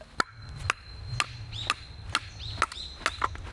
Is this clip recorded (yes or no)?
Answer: yes